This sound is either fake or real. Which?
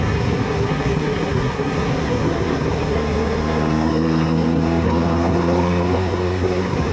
fake